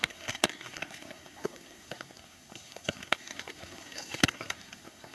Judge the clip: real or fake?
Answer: fake